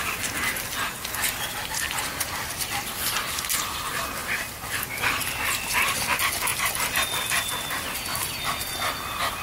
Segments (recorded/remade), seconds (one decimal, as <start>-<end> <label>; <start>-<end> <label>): 0.0-9.4 recorded